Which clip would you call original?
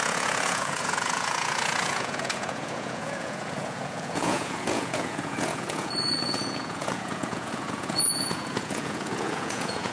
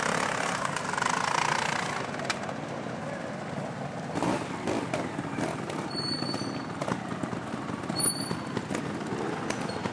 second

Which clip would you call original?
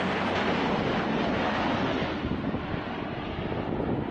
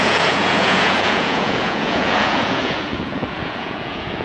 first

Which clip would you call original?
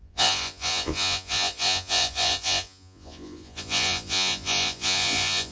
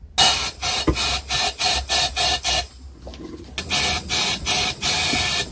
second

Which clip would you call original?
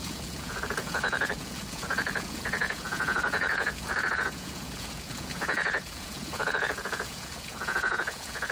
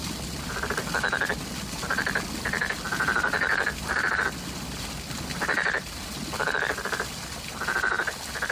second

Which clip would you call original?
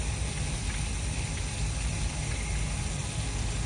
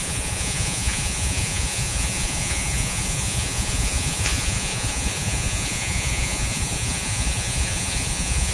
first